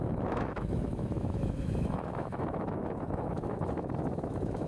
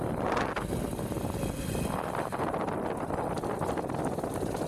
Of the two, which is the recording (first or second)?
second